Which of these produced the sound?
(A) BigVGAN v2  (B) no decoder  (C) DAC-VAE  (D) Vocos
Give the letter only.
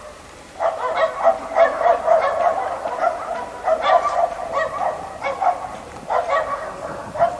B